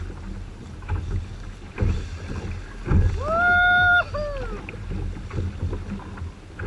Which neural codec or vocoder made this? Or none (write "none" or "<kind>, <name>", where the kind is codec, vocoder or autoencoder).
none